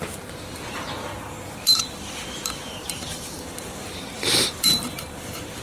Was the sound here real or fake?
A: fake